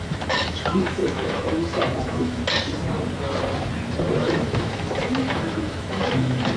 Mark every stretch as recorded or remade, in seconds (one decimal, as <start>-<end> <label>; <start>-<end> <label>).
0.0-2.4 remade; 2.4-4.2 recorded; 4.2-6.6 remade